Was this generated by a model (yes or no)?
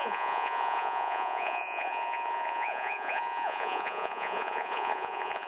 yes